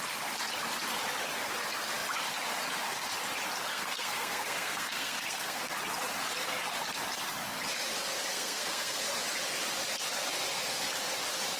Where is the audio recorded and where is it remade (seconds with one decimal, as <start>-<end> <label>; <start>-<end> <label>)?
0.0-3.7 recorded; 3.7-5.7 remade; 5.7-8.3 recorded; 8.3-9.0 remade; 9.0-11.6 recorded